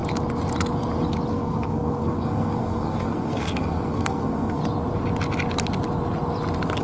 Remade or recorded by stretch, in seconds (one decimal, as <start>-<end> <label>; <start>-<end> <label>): 0.0-1.3 recorded; 1.3-4.6 remade; 4.6-6.8 recorded